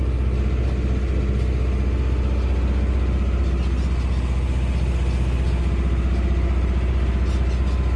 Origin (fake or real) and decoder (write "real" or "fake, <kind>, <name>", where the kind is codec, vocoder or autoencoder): real